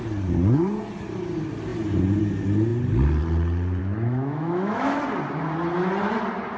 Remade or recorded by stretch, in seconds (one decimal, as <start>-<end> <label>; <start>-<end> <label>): 0.0-3.8 recorded; 3.8-5.0 remade; 5.0-6.6 recorded